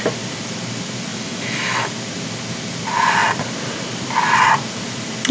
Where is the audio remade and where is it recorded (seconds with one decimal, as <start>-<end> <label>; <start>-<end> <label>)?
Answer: 0.0-1.1 recorded; 1.1-1.9 remade; 1.9-5.3 recorded